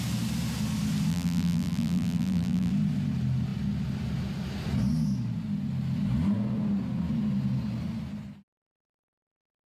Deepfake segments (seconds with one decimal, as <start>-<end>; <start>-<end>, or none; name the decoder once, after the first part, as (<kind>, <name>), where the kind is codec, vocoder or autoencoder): 1.1-2.7 (vocoder, BigVGAN v2)